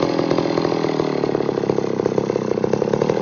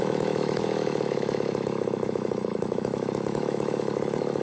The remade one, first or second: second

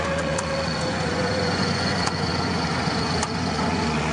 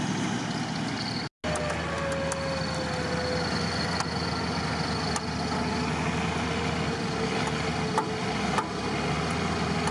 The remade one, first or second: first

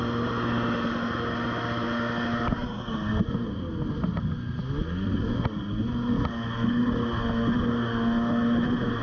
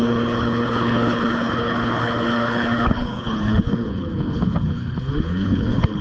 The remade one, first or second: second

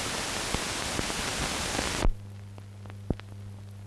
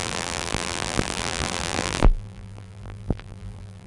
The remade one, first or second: second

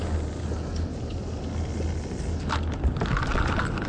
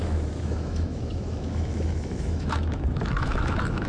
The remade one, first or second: second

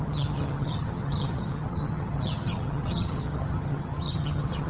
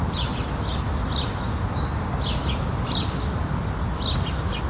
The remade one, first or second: first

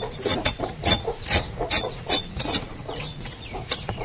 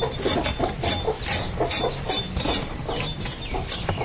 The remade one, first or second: first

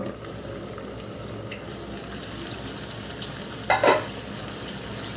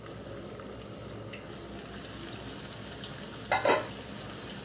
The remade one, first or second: first